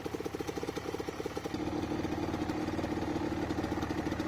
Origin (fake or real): real